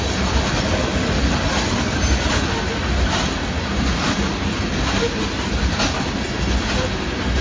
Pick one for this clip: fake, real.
real